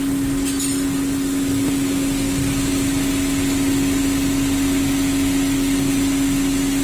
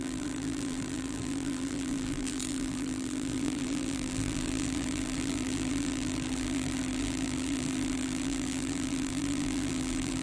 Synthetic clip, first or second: second